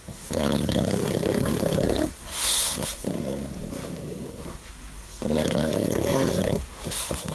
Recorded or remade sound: remade